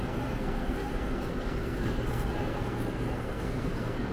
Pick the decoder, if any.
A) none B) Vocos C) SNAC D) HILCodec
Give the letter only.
C